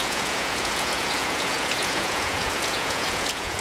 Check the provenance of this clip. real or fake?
fake